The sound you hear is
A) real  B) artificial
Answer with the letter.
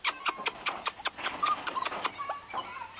A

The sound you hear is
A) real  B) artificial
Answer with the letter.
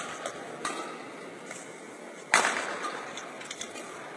A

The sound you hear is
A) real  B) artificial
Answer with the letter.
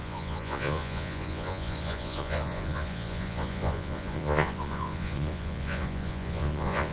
B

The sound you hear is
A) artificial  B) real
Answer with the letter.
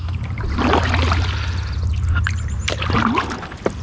B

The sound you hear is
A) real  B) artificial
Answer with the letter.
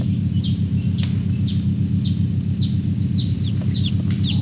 A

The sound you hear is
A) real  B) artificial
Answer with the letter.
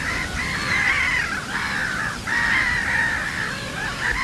A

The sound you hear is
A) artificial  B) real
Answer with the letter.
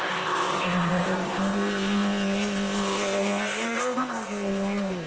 A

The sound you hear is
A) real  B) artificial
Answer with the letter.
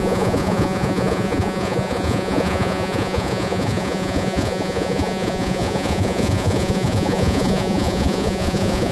B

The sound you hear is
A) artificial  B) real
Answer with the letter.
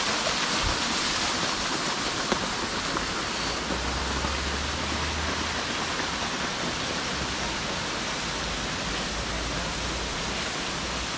B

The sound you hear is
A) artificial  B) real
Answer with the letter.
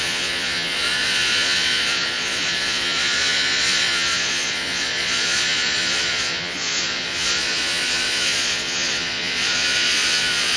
A